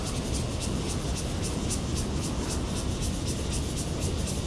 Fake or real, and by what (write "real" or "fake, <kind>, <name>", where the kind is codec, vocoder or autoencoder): real